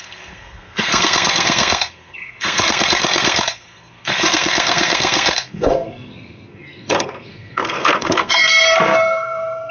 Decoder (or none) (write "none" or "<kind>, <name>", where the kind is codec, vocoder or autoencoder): codec, SNAC